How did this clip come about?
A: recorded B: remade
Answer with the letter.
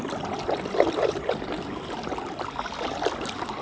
A